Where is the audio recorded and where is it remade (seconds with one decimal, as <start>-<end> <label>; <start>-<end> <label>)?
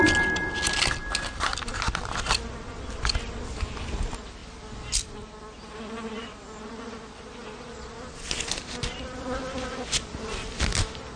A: 0.0-11.2 recorded